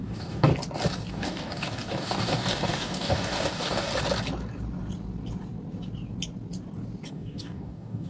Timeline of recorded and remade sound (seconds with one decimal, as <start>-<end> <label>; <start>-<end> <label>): 0.0-0.5 remade; 0.5-1.1 recorded; 1.1-3.9 remade; 3.9-7.1 recorded; 7.1-8.1 remade